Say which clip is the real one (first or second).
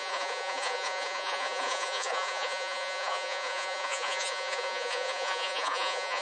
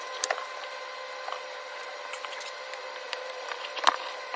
second